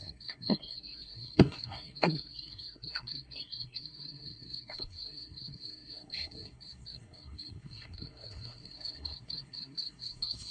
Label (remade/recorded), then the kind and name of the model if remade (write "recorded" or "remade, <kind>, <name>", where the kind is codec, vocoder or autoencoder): remade, codec, SNAC